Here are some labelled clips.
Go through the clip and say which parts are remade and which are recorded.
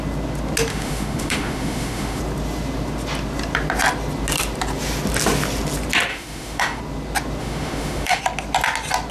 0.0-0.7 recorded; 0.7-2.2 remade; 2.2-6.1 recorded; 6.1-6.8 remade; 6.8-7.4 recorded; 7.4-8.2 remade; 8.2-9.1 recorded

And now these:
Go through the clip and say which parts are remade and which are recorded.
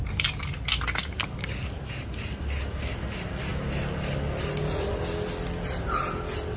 0.0-1.0 recorded; 1.0-2.4 remade; 2.4-6.6 recorded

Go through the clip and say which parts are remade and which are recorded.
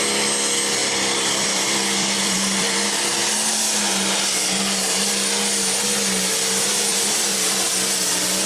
0.0-0.8 recorded; 0.8-3.2 remade; 3.2-6.9 recorded; 6.9-8.1 remade; 8.1-8.5 recorded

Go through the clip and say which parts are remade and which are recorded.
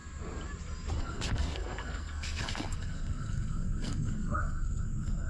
0.0-1.0 recorded; 1.0-5.3 remade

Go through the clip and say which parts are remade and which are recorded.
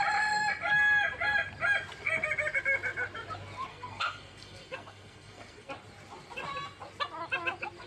0.0-3.7 recorded; 3.7-5.7 remade; 5.7-7.9 recorded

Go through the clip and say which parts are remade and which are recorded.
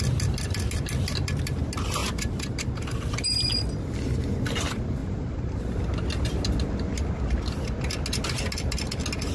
0.0-2.0 recorded; 2.0-3.1 remade; 3.1-5.0 recorded; 5.0-5.6 remade; 5.6-9.3 recorded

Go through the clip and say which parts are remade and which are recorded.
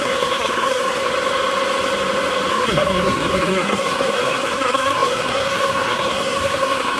0.0-1.1 remade; 1.1-2.5 recorded; 2.5-7.0 remade